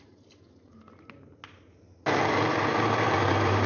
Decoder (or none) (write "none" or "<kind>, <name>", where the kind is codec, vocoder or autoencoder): none